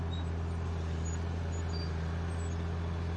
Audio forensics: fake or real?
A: real